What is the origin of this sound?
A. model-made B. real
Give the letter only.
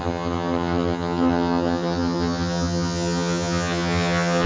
A